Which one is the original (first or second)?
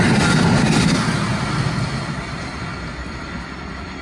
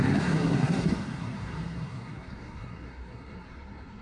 first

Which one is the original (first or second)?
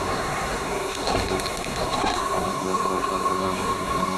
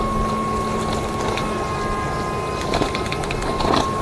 second